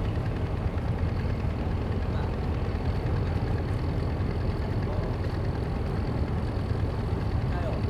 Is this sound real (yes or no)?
yes